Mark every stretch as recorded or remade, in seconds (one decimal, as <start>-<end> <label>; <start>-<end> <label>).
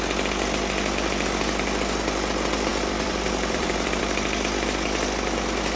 0.0-2.7 recorded; 2.7-4.0 remade; 4.0-5.8 recorded